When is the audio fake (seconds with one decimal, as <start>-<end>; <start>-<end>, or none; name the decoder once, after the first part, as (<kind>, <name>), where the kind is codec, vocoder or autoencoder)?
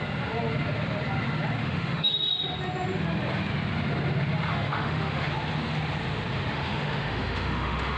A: 1.6-2.1 (autoencoder, DAC-VAE); 4.5-5.3; 6.5-8.0